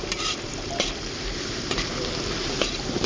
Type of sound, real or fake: fake